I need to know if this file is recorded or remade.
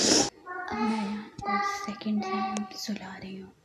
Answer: recorded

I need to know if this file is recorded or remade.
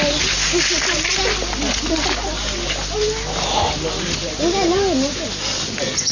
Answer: recorded